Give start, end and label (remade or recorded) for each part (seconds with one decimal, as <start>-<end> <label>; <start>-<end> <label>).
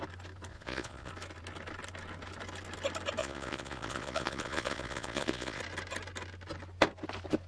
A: 0.0-0.5 recorded; 0.5-1.1 remade; 1.1-3.2 recorded; 3.2-5.6 remade; 5.6-7.5 recorded